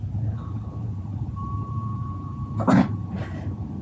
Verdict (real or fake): fake